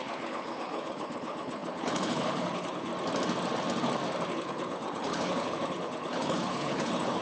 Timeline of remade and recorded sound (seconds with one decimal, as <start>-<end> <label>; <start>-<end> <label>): 0.0-2.9 remade; 2.9-4.3 recorded; 4.3-7.2 remade